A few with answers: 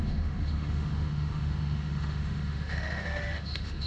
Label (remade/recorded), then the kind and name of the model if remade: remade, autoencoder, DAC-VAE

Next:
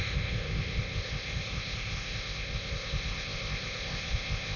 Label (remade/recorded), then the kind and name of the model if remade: remade, codec, ZipCodec